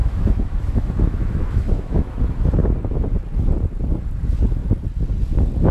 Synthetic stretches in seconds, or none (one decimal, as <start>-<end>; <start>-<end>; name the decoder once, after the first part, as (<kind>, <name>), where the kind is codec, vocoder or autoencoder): 0.0-2.2 (autoencoder, DAC-VAE)